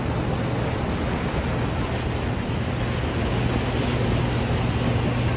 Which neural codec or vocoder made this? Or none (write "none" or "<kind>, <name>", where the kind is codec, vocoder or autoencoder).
none